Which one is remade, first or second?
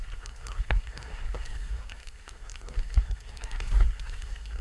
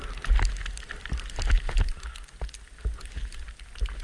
first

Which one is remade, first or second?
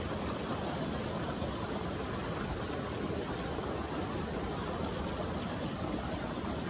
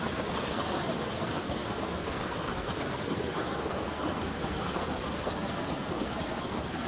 second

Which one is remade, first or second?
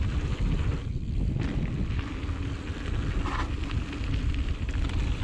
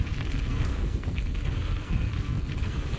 second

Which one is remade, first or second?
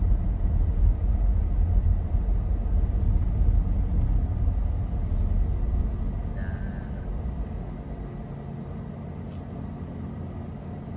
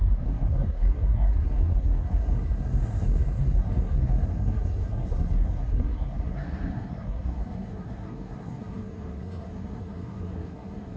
second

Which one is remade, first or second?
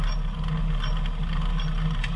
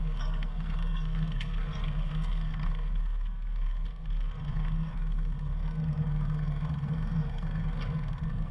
second